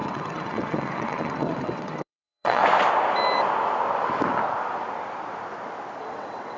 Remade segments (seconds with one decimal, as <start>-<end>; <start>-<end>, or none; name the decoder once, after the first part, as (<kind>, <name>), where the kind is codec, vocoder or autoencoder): 0.0-2.6 (vocoder, WaveNeXt); 6.0-6.6